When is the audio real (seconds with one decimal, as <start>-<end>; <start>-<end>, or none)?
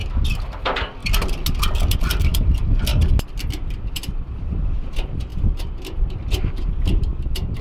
0.0-7.6